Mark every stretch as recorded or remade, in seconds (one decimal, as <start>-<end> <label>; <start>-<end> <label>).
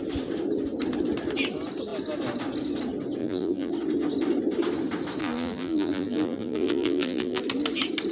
0.0-3.2 recorded; 3.2-3.7 remade; 3.7-5.2 recorded; 5.2-7.4 remade; 7.4-8.1 recorded